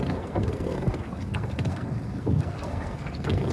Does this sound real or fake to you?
fake